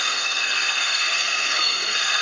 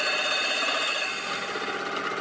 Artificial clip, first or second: first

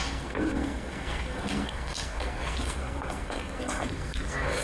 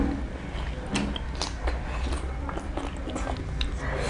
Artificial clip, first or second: first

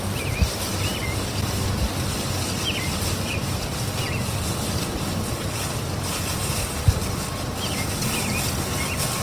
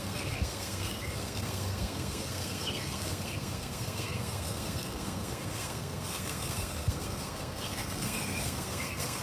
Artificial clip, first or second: second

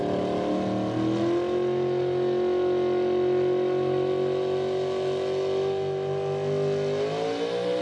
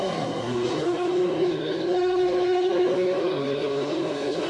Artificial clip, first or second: second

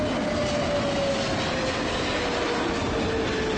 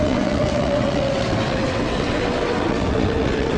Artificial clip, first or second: second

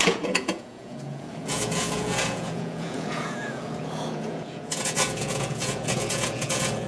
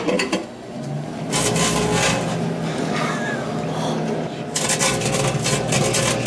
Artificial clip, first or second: first